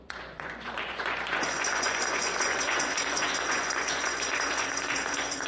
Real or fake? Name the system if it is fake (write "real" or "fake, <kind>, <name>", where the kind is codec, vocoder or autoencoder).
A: fake, vocoder, Vocos